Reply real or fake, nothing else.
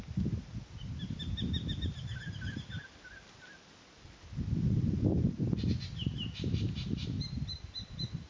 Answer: real